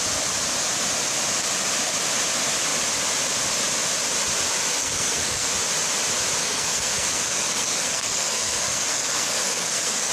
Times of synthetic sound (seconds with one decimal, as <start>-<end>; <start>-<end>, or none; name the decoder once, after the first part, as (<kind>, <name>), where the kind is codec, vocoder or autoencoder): 4.7-5.5 (codec, SNAC); 6.4-10.1